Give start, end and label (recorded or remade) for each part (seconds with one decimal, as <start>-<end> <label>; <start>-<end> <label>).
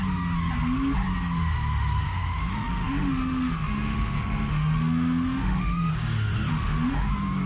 0.0-2.0 recorded; 2.0-5.9 remade; 5.9-6.5 recorded; 6.5-7.1 remade; 7.1-7.5 recorded